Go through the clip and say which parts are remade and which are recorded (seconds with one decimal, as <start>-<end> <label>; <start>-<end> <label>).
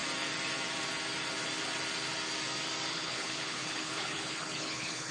0.0-2.9 recorded; 2.9-5.1 remade